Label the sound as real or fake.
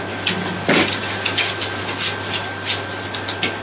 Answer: real